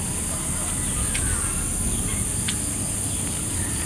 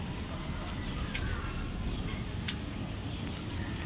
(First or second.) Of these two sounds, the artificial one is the second